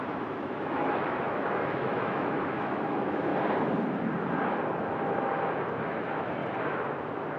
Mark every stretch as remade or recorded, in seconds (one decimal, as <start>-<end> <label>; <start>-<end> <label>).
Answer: 0.0-3.3 remade; 3.3-6.0 recorded; 6.0-6.4 remade; 6.4-7.4 recorded